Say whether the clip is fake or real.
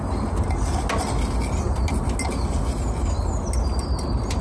real